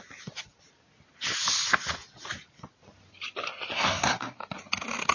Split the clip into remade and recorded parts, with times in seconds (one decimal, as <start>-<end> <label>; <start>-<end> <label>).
0.0-3.7 recorded; 3.7-4.4 remade; 4.4-5.1 recorded